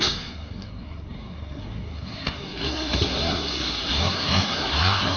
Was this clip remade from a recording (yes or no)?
yes